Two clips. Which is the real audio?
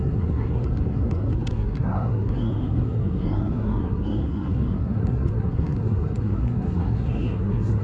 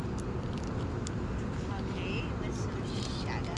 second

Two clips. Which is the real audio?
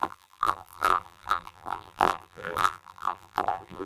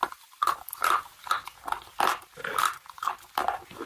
second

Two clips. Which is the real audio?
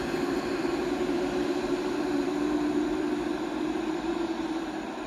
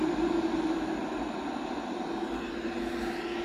second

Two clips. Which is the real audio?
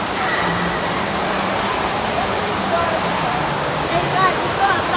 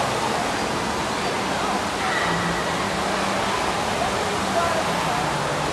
second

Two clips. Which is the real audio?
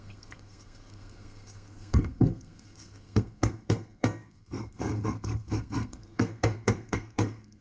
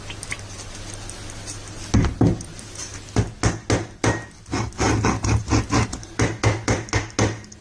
second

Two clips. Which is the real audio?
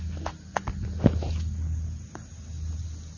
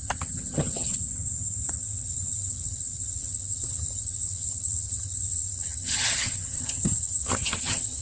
first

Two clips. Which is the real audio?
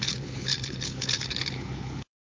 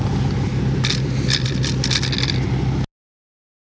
second